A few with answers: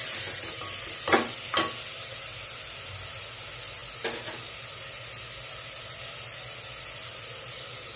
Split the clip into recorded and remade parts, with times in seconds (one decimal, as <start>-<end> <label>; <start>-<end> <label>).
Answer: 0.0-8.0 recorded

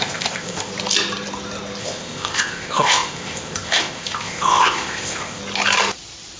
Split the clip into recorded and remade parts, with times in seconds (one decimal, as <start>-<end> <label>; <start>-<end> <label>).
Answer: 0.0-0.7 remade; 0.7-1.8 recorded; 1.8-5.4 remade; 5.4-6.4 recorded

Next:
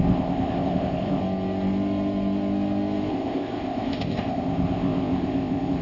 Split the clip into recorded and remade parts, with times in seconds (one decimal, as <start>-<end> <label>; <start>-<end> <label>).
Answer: 0.0-1.2 remade; 1.2-3.1 recorded; 3.1-5.8 remade

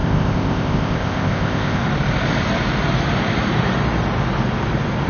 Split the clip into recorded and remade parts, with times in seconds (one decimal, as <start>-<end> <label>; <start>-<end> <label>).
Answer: 0.0-1.8 remade; 1.8-5.1 recorded

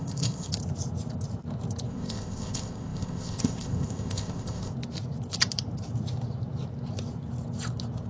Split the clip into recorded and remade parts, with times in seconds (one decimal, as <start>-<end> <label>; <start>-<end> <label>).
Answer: 0.0-0.5 remade; 0.5-1.9 recorded; 1.9-4.7 remade; 4.7-8.1 recorded

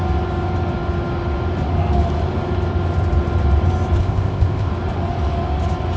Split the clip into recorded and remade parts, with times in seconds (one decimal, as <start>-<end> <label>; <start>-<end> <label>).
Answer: 0.0-4.0 recorded; 4.0-4.7 remade; 4.7-6.0 recorded

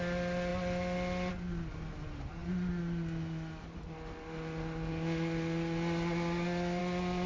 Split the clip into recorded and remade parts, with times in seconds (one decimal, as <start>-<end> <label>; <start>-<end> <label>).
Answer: 0.0-7.3 recorded